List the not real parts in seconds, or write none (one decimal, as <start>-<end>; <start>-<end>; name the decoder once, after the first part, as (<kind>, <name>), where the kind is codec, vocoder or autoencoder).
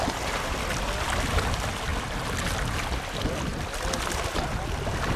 none